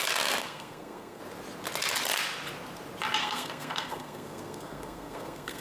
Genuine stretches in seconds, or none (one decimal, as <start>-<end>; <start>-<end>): 0.0-0.4; 1.2-3.2